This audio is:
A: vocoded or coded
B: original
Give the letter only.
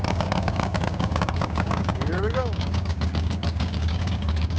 A